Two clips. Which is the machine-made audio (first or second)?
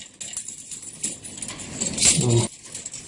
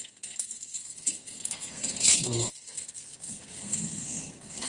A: second